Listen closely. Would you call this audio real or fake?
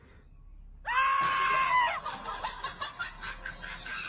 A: real